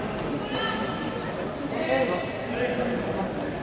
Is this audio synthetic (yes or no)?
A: no